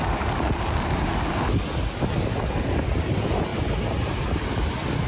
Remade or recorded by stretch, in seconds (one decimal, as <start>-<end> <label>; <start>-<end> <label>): 0.0-5.1 recorded